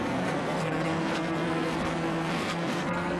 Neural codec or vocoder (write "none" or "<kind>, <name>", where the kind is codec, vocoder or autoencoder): codec, SNAC